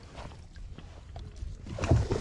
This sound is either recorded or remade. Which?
recorded